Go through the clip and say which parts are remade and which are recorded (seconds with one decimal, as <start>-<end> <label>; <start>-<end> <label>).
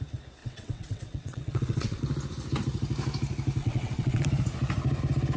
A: 0.0-0.4 recorded; 0.4-2.0 remade; 2.0-3.6 recorded; 3.6-4.2 remade; 4.2-5.4 recorded